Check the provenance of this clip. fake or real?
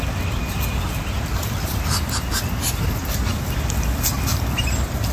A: real